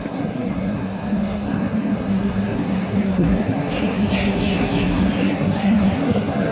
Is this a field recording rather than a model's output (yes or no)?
no